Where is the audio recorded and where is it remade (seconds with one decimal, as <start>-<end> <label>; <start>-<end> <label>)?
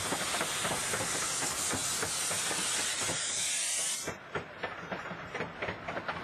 0.0-6.2 recorded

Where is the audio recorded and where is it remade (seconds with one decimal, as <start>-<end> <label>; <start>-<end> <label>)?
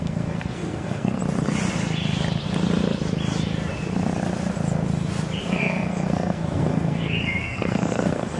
0.0-1.2 remade; 1.2-5.4 recorded; 5.4-8.4 remade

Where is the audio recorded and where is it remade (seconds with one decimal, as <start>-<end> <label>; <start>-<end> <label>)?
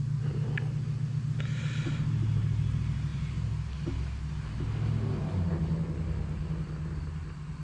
0.0-7.6 recorded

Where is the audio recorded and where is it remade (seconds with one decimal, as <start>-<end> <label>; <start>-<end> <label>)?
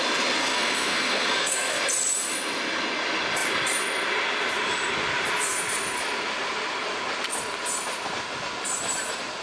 0.0-0.4 recorded; 0.4-1.8 remade; 1.8-9.4 recorded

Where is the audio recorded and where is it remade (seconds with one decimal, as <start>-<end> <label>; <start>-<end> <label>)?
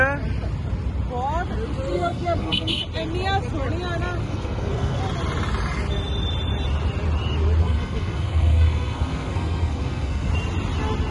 0.0-1.9 recorded; 1.9-2.8 remade; 2.8-4.2 recorded; 4.2-5.0 remade; 5.0-7.6 recorded; 7.6-10.3 remade; 10.3-11.1 recorded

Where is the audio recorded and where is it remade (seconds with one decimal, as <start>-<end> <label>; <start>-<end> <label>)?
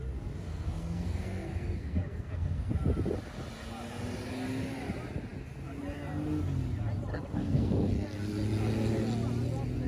0.0-0.5 recorded; 0.5-2.7 remade; 2.7-7.1 recorded; 7.1-7.9 remade; 7.9-9.9 recorded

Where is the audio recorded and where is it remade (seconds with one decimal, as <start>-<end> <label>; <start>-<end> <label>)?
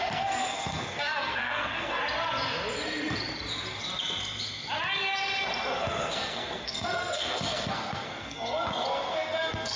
0.0-2.0 remade; 2.0-5.8 recorded; 5.8-9.8 remade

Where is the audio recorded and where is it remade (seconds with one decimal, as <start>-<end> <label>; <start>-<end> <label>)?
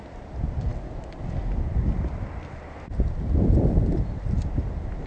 0.0-5.1 recorded